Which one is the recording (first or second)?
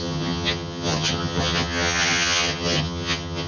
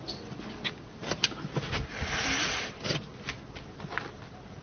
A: second